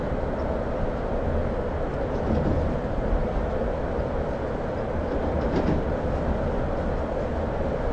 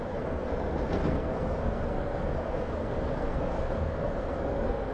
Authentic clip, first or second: first